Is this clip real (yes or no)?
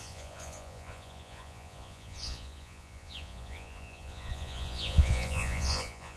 no